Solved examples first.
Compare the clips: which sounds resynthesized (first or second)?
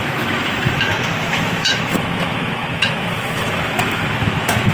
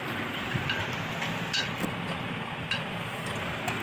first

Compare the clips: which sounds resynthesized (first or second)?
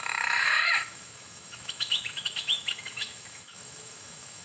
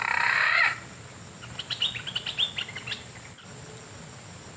first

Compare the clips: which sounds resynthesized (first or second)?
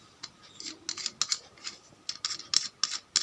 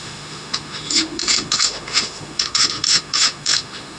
second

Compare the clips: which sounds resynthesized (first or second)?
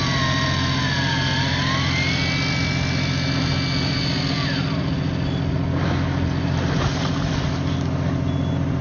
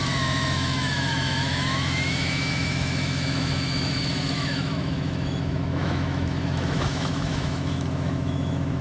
second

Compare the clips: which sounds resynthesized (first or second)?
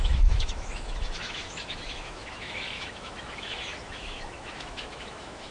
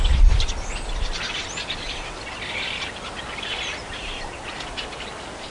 first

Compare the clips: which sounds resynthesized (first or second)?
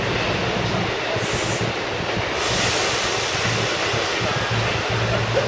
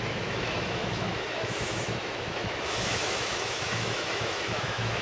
second